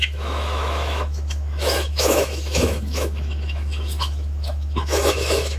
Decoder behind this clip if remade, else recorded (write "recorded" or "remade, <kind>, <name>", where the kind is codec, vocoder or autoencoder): remade, autoencoder, DAC-VAE